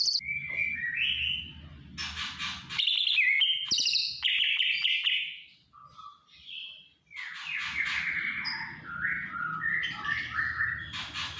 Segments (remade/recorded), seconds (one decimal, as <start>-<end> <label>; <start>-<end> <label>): 0.0-11.4 recorded